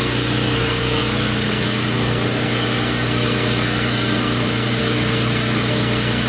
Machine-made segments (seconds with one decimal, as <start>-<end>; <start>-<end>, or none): 0.0-6.3